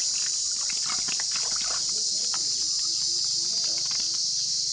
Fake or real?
real